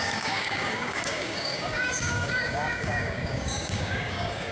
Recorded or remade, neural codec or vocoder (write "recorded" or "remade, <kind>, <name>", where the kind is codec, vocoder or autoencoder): remade, codec, DAC